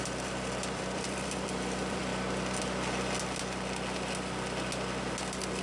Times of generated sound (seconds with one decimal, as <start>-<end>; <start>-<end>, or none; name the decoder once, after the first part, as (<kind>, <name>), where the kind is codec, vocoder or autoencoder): 0.0-2.1 (vocoder, BigVGAN v2)